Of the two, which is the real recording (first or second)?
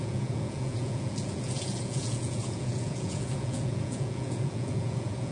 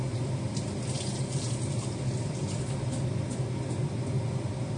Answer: second